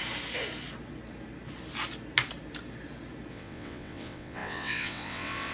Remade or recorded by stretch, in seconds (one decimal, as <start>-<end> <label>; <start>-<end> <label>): 0.0-3.3 recorded; 3.3-5.5 remade

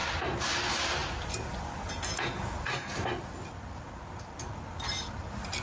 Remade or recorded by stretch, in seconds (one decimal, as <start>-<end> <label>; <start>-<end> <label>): 0.0-5.6 recorded

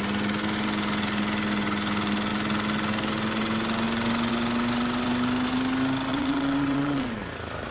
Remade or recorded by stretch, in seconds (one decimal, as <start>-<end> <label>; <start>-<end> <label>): 0.0-6.1 recorded; 6.1-7.2 remade; 7.2-7.7 recorded

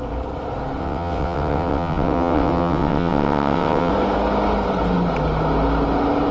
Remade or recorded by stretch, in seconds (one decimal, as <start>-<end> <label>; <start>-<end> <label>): 0.0-0.8 recorded; 0.8-3.9 remade; 3.9-6.3 recorded

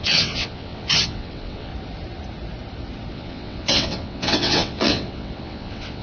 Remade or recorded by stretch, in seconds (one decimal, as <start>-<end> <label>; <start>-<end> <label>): 0.0-1.7 remade; 1.7-3.1 recorded; 3.1-6.0 remade

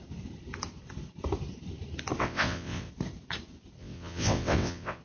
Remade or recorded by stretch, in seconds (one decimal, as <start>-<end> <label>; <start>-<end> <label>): 0.0-2.2 recorded; 2.2-2.9 remade; 2.9-3.8 recorded; 3.8-5.0 remade